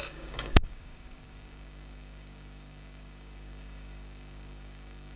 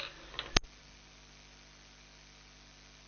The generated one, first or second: first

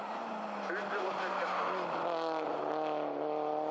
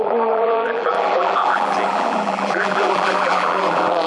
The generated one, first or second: second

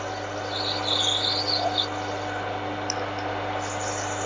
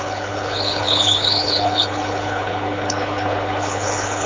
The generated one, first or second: second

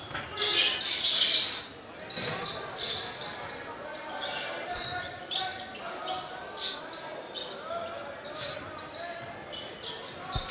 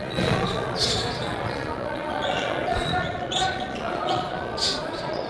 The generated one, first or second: second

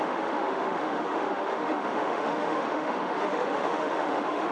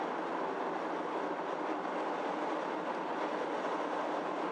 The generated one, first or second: first